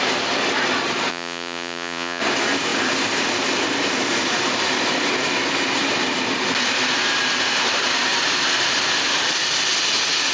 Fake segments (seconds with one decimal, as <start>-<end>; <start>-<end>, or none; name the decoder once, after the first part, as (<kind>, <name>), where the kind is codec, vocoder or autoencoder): 1.1-2.2 (vocoder, Vocos)